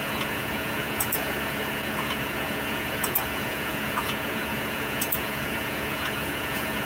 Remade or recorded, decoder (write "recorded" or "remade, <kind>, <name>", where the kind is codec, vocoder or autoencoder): remade, vocoder, Vocos